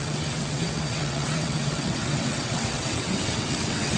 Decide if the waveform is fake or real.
fake